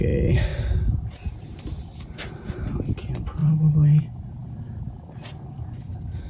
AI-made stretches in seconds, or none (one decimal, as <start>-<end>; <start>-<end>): 3.4-4.0